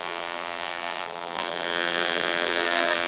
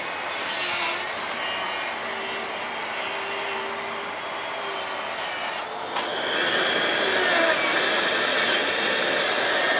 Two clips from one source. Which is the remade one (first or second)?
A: first